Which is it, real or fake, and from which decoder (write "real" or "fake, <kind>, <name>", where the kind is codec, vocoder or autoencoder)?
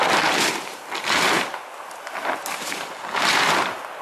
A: real